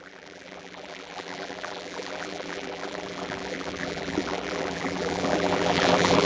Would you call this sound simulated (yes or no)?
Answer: yes